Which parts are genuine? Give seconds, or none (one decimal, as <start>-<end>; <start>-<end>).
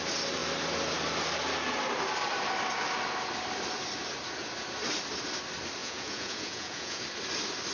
0.0-5.8; 7.0-7.7